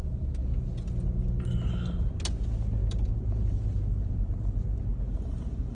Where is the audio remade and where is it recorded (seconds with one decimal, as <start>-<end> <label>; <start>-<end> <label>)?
0.0-2.8 recorded; 2.8-4.8 remade; 4.8-5.7 recorded